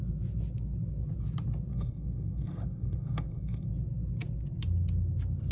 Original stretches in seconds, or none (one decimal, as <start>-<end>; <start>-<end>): 0.0-1.7; 3.7-5.5

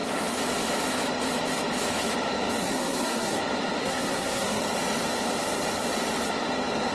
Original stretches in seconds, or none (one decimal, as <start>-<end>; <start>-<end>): 0.0-2.6; 3.4-3.8; 4.6-6.9

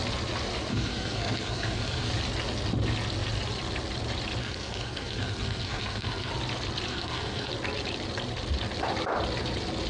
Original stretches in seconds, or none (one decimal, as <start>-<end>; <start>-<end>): 0.0-0.7; 2.1-4.4; 6.3-6.9; 7.5-9.9

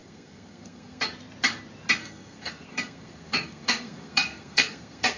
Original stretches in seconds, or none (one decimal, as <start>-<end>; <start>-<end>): 1.0-2.0

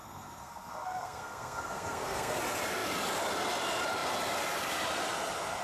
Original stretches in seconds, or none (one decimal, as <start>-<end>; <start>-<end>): 2.4-5.6

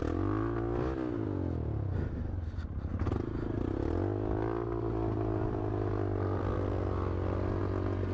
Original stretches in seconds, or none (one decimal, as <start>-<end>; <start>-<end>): 0.0-8.1